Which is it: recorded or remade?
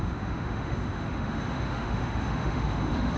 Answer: remade